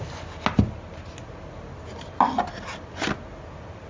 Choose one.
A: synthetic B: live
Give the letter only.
B